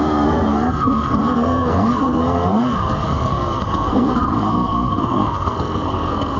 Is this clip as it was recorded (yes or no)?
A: no